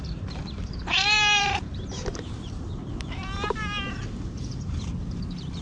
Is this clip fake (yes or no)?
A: yes